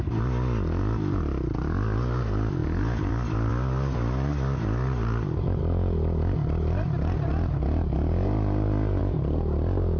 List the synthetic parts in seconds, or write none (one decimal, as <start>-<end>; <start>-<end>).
none